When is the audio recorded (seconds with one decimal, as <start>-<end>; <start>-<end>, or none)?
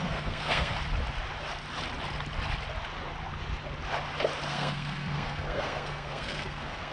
0.7-4.5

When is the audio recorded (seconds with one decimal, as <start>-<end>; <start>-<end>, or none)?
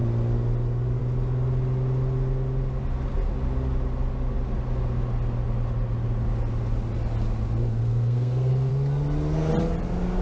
0.0-7.8; 8.7-10.2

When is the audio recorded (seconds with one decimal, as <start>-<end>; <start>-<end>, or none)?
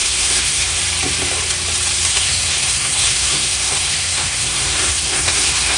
0.8-2.1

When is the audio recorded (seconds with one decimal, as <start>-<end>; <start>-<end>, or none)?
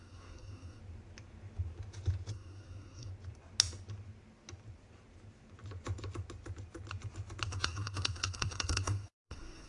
0.8-2.3; 3.1-7.5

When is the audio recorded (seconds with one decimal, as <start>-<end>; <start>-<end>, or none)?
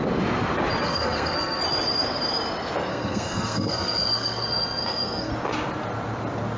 0.0-0.8; 1.6-2.9; 5.3-6.6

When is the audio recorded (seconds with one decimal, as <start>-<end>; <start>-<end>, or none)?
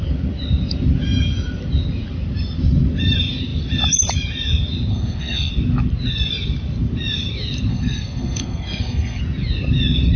0.0-4.9; 5.5-7.7; 9.2-10.2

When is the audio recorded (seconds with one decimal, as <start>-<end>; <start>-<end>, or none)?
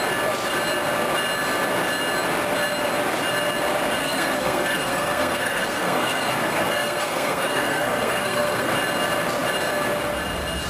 0.0-4.0; 8.7-10.7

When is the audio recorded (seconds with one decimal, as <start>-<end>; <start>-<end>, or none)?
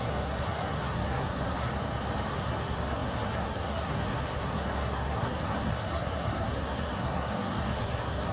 1.7-2.3